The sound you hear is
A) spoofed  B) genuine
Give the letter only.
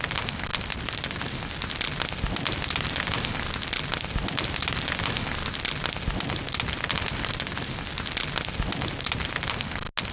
B